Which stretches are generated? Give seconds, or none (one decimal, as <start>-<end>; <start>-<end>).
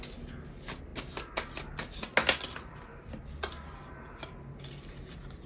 none